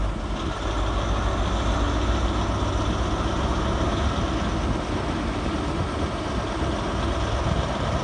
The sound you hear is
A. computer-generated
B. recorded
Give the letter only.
B